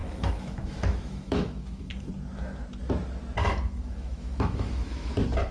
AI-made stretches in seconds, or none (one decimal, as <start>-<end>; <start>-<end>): 0.0-2.1; 3.4-5.1